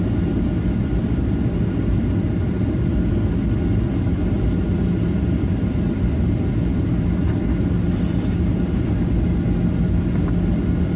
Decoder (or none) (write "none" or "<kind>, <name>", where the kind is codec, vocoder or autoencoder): none